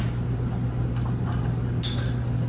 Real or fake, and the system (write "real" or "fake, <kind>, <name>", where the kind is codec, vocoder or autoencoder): real